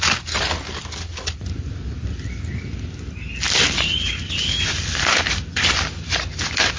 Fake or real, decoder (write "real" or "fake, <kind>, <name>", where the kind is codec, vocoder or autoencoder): real